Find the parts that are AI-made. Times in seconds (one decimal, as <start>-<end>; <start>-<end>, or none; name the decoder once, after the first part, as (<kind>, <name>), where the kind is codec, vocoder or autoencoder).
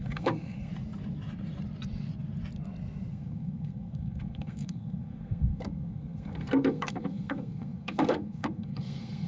0.0-0.7 (codec, SNAC); 3.1-9.3